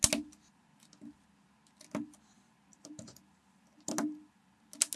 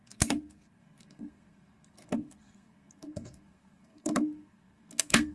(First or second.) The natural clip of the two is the first